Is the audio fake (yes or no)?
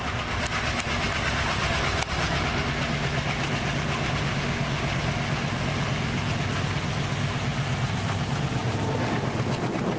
no